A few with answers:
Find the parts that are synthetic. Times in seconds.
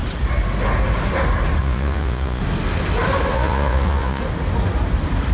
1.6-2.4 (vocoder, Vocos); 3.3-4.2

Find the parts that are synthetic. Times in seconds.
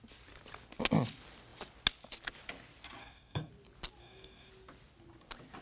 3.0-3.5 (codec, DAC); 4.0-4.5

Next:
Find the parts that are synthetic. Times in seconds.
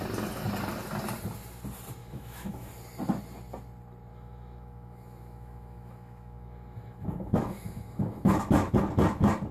2.0-2.7 (autoencoder, DAC-VAE); 4.1-8.7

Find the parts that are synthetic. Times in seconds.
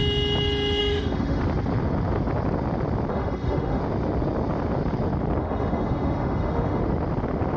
0.8-1.4 (autoencoder, DAC-VAE); 3.1-3.8; 5.4-6.8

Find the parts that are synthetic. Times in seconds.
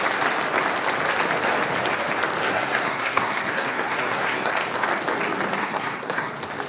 2.4-4.5 (codec, SNAC); 5.6-6.3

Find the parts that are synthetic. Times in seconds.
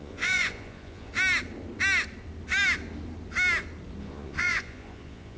0.0-1.1 (vocoder, Vocos); 4.0-5.4